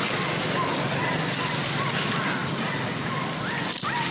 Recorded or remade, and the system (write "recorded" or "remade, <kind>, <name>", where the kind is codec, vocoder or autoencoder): recorded